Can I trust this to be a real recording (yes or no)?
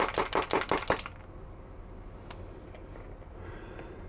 yes